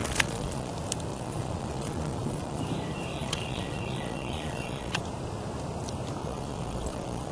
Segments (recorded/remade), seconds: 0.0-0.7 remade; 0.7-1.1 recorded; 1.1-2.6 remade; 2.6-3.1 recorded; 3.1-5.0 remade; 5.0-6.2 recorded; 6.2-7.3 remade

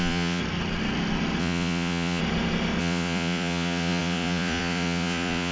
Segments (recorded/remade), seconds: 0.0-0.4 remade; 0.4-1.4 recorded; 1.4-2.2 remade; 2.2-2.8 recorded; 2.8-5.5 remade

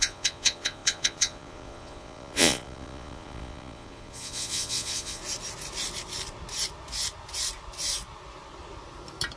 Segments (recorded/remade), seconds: 0.0-5.2 remade; 5.2-9.4 recorded